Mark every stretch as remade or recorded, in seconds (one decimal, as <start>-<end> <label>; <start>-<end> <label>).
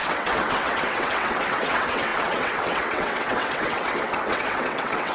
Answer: 0.0-5.1 remade